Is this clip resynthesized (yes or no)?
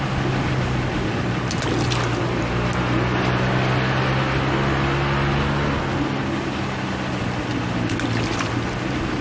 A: no